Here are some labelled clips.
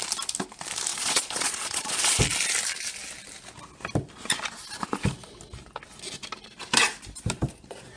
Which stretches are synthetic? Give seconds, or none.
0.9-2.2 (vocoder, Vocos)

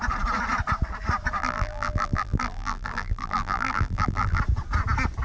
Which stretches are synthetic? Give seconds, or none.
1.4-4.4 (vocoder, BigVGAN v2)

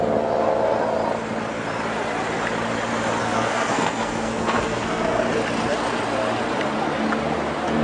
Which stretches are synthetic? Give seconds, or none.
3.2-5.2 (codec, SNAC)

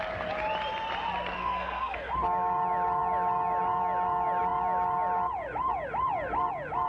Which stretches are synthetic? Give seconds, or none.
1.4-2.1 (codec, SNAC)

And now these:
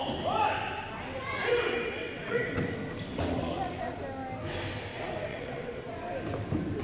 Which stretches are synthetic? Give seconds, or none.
1.5-2.6 (vocoder, WaveNeXt); 3.1-3.8; 5.3-5.9

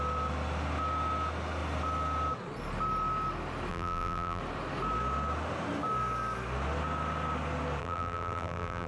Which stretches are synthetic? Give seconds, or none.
3.7-4.4 (vocoder, BigVGAN v2); 7.8-8.9

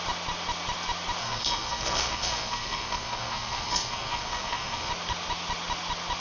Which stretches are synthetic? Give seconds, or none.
1.2-4.9 (codec, SNAC)